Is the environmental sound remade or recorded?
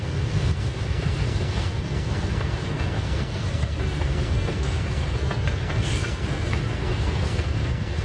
remade